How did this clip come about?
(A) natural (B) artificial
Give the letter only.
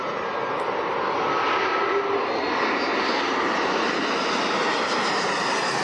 A